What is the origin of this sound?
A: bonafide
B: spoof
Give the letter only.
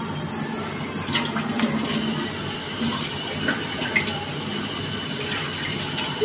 A